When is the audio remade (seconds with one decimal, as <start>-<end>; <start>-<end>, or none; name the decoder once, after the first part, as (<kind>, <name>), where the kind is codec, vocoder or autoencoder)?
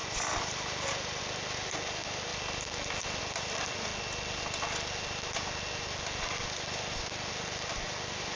0.0-2.3 (vocoder, BigVGAN v2); 3.2-3.9; 6.2-8.3